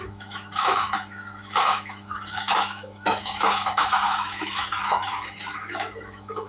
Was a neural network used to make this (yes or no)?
yes